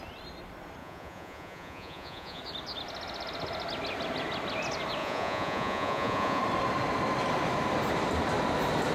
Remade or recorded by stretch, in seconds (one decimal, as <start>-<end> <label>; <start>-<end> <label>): 0.0-0.8 recorded; 0.8-2.4 remade; 2.4-5.0 recorded; 5.0-6.4 remade; 6.4-8.9 recorded